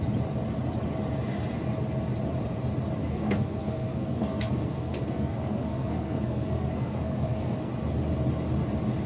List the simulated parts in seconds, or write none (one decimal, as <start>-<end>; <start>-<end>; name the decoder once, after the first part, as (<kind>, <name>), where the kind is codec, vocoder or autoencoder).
3.0-7.7 (codec, SNAC)